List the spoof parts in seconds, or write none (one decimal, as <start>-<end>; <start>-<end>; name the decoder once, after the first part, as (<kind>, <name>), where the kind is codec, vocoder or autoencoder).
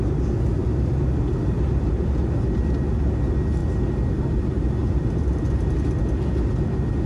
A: 3.6-5.5 (vocoder, BigVGAN v2)